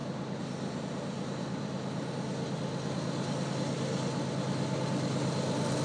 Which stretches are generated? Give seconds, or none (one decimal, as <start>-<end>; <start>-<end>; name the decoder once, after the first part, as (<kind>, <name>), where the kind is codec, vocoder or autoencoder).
none